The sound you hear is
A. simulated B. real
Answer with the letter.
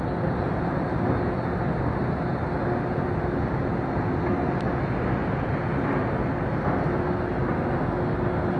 B